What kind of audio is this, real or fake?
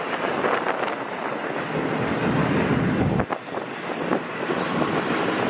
real